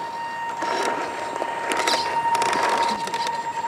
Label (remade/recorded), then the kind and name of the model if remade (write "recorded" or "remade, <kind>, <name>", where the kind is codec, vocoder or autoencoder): recorded